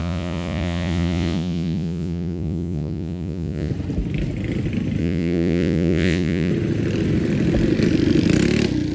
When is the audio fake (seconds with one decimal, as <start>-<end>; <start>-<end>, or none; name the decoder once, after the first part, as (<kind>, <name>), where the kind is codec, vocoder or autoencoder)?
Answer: 0.0-3.7 (vocoder, Vocos); 5.0-6.5